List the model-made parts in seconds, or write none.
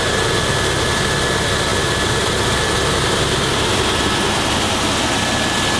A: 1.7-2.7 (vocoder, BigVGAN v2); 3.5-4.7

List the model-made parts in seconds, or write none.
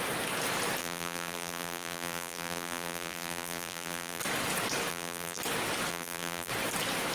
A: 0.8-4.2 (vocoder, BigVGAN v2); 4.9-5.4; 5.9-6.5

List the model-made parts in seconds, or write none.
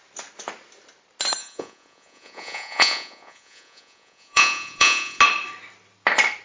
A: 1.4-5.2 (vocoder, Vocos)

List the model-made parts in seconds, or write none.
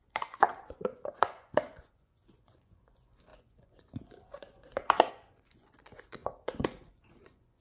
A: 0.0-7.6 (vocoder, Vocos)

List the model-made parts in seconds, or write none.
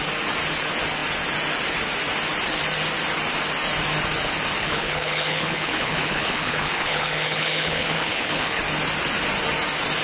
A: 4.6-8.6 (codec, HILCodec)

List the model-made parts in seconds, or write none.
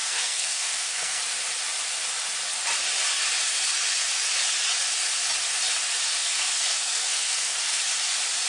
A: 0.0-1.2 (codec, SNAC); 6.2-7.8